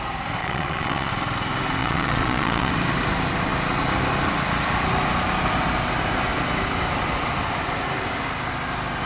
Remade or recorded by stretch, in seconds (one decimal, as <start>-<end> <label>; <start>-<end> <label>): 0.0-0.4 recorded; 0.4-1.1 remade; 1.1-1.8 recorded; 1.8-2.7 remade; 2.7-9.1 recorded

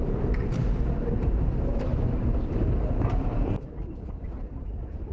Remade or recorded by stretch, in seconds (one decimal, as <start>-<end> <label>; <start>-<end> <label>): 0.0-1.9 remade; 1.9-3.2 recorded; 3.2-5.1 remade

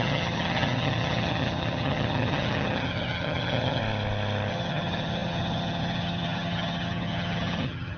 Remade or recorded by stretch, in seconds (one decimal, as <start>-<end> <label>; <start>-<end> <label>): 0.0-3.8 remade; 3.8-4.5 recorded; 4.5-8.0 remade

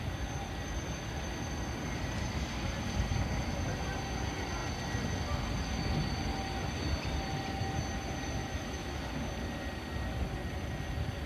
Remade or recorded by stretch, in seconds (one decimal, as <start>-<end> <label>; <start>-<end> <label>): 0.0-8.4 recorded; 8.4-9.1 remade; 9.1-11.3 recorded

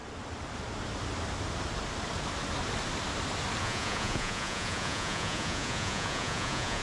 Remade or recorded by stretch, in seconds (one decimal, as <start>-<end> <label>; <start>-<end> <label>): 0.0-3.6 recorded; 3.6-6.8 remade